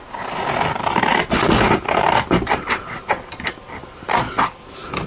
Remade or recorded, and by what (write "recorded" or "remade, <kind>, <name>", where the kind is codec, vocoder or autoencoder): recorded